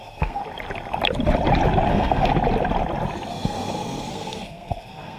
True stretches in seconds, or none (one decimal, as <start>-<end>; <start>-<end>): 0.4-1.9; 2.3-3.3